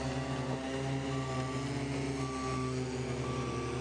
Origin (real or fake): real